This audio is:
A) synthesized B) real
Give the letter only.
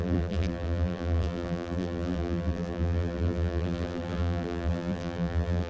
A